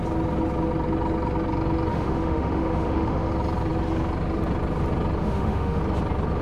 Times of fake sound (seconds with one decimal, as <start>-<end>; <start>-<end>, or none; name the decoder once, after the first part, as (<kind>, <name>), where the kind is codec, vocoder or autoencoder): 1.9-3.3 (autoencoder, DAC-VAE); 5.2-5.8